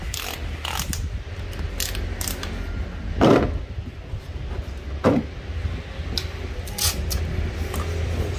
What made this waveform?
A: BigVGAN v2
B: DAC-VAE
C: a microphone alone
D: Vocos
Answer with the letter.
C